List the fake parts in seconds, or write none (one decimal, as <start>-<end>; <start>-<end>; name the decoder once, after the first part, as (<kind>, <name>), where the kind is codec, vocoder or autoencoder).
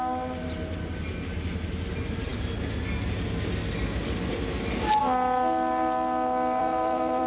6.6-7.3 (vocoder, BigVGAN v2)